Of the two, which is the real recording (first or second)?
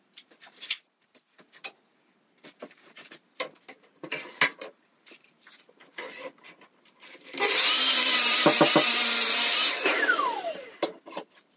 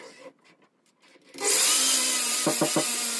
second